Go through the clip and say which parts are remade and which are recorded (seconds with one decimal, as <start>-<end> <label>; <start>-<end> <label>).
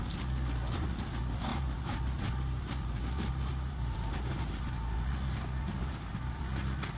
0.0-1.5 recorded; 1.5-3.0 remade; 3.0-3.5 recorded; 3.5-5.1 remade; 5.1-5.8 recorded; 5.8-6.4 remade; 6.4-7.0 recorded